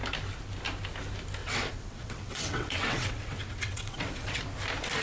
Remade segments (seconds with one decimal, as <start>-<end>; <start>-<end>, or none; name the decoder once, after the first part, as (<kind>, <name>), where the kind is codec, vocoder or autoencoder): 1.4-4.4 (vocoder, WaveNeXt)